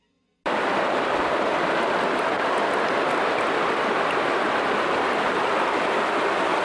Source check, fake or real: real